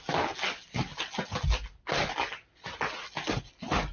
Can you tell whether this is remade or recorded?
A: recorded